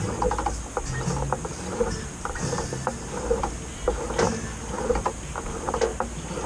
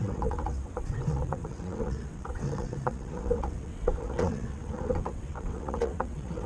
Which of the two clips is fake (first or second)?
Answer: second